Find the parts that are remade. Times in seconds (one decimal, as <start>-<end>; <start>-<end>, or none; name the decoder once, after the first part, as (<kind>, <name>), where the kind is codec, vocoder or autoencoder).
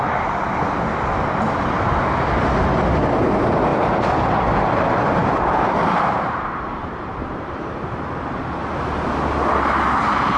3.7-4.8 (vocoder, BigVGAN v2); 5.2-7.6